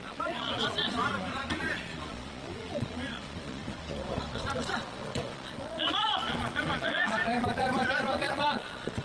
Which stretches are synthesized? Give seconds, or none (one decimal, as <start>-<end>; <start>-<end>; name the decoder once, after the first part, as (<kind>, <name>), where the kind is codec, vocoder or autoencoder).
0.0-9.0 (vocoder, Vocos)

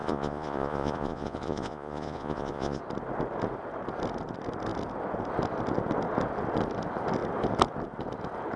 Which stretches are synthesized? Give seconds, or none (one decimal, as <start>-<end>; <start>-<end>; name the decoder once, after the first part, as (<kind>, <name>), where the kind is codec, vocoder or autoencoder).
0.0-2.8 (vocoder, Vocos)

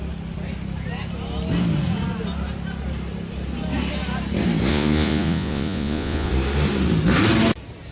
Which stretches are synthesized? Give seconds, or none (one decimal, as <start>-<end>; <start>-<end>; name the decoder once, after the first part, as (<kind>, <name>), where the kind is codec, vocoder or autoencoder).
4.7-6.3 (vocoder, Vocos)